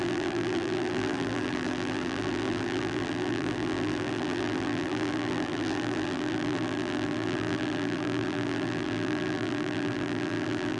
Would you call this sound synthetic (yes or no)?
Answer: yes